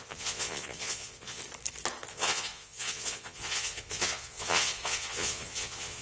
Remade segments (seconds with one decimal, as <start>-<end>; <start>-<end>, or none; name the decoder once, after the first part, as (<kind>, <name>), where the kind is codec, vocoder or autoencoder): 0.0-1.4 (vocoder, Vocos); 2.1-6.0